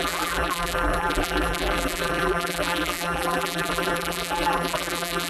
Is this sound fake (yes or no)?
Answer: yes